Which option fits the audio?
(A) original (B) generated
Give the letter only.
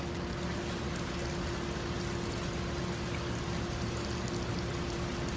A